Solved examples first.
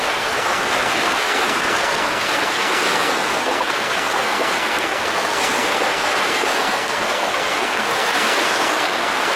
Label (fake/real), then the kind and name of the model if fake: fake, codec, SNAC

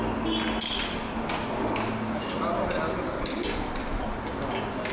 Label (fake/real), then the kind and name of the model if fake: real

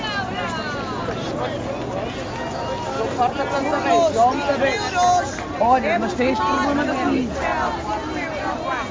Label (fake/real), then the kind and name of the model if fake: real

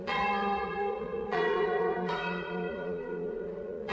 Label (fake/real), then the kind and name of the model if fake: fake, vocoder, Vocos